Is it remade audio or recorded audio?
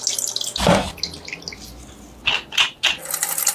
recorded